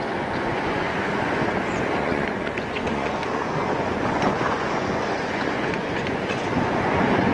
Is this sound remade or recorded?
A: remade